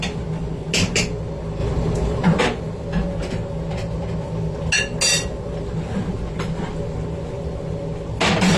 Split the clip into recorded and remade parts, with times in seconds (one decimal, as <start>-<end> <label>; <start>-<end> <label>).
0.0-8.6 recorded